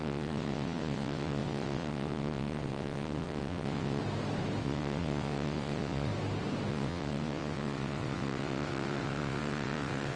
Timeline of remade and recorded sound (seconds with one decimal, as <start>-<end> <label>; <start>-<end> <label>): 0.0-4.0 remade; 4.0-4.6 recorded; 4.6-6.1 remade; 6.1-6.7 recorded; 6.7-10.2 remade